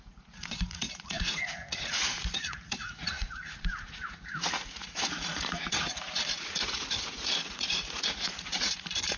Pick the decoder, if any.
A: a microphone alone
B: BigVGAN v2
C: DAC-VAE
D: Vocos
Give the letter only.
D